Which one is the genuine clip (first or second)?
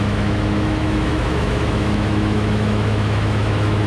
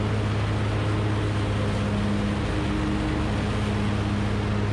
second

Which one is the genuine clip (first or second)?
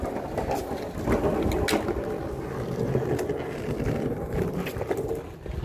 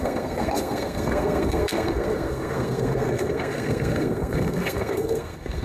first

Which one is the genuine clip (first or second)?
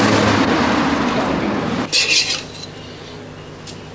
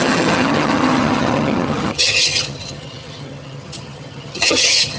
first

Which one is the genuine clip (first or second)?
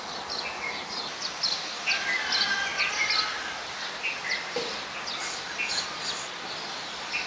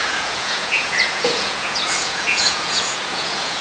first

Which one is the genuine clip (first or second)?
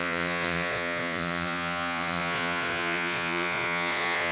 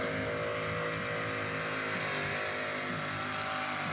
second